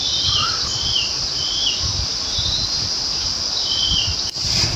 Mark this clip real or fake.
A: real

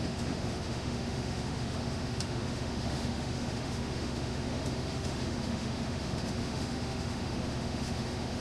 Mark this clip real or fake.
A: fake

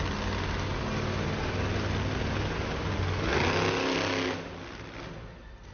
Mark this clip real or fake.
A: real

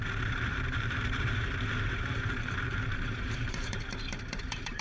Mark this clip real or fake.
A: fake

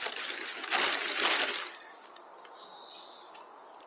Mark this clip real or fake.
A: real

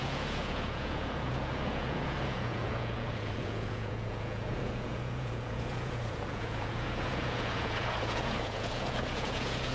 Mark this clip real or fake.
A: fake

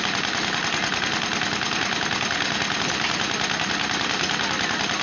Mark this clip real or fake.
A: real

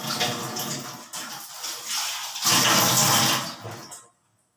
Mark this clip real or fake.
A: real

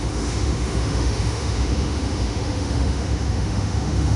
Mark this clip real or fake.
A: fake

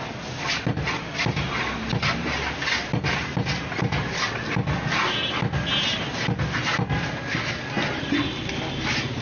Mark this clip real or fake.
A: real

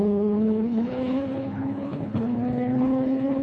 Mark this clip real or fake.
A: fake